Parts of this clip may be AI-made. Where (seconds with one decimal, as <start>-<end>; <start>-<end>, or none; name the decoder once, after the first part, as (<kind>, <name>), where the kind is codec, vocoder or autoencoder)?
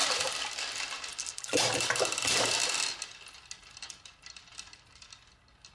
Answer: none